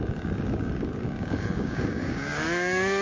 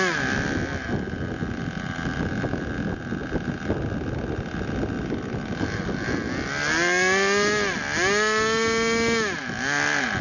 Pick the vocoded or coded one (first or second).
first